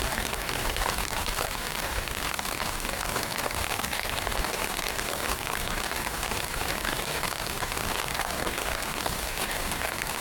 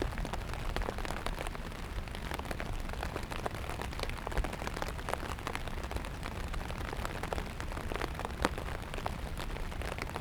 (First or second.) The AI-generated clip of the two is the first